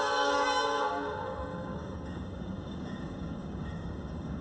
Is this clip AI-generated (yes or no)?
yes